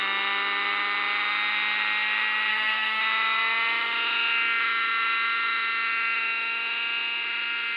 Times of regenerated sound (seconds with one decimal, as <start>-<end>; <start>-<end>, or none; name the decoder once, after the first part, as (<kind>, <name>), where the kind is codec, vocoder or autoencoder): 2.5-3.0 (codec, SNAC)